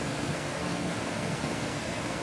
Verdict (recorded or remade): remade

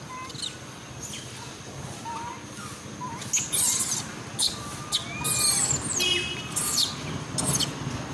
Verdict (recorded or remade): recorded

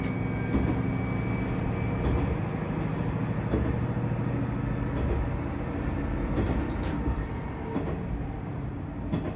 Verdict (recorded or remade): recorded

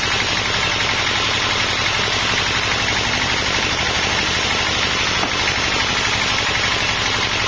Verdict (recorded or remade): recorded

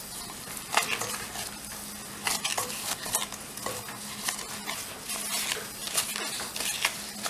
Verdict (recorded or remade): recorded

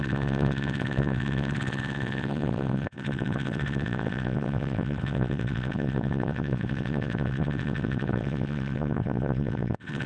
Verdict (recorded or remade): remade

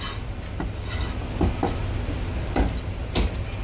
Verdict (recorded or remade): recorded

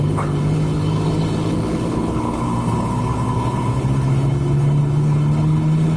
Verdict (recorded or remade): remade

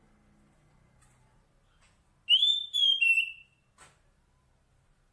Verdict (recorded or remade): recorded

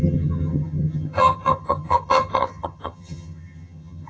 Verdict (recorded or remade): remade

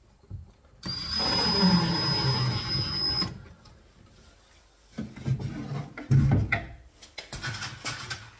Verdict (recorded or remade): recorded